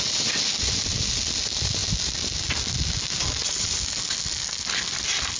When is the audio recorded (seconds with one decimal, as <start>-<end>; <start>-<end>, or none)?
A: 0.0-5.4